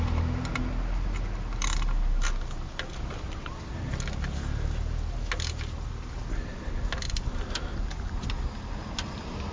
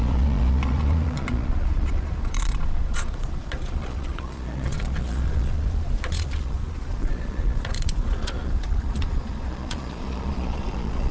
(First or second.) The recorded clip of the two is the first